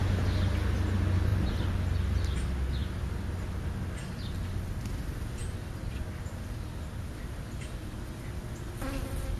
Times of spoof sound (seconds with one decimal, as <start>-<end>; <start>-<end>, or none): none